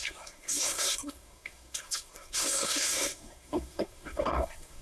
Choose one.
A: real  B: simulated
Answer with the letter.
B